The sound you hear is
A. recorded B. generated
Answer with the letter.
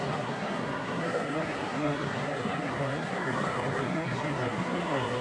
B